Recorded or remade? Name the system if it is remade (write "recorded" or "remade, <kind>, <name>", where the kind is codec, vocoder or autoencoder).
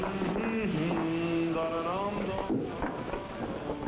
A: recorded